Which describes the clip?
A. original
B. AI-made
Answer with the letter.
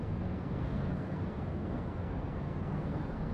B